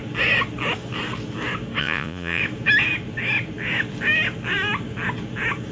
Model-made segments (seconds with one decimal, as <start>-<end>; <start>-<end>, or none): 1.8-2.4